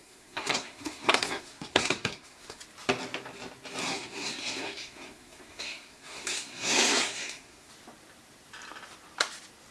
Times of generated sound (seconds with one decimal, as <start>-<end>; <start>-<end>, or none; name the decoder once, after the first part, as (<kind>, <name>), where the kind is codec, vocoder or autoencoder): 0.0-2.6 (codec, SNAC); 3.8-7.7